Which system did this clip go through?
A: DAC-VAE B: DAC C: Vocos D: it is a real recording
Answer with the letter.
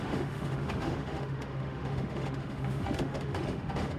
A